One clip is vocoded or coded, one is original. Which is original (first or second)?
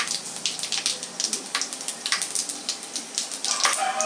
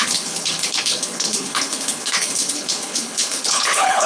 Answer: first